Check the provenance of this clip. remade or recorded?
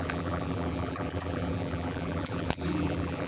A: remade